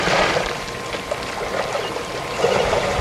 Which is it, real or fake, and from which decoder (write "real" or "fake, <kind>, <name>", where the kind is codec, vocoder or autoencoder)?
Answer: real